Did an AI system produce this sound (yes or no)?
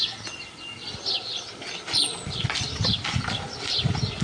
no